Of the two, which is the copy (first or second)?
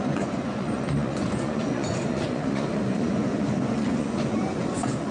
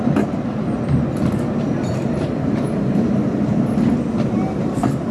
first